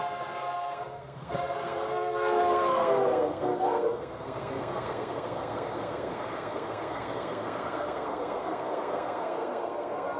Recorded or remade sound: remade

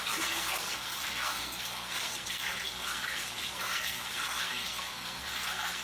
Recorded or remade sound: remade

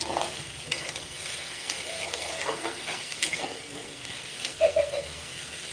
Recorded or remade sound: remade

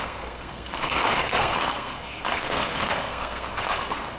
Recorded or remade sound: remade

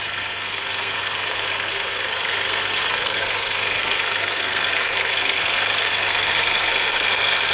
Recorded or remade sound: remade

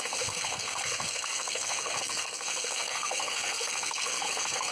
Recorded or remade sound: remade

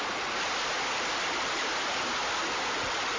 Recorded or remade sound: recorded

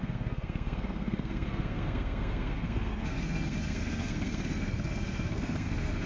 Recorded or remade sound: remade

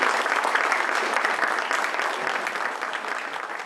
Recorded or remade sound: recorded